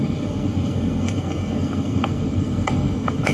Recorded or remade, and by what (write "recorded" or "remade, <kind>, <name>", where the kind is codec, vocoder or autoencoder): remade, codec, SNAC